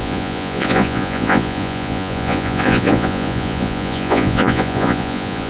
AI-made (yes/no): yes